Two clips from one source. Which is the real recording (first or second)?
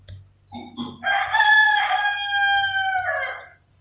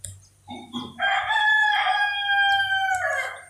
first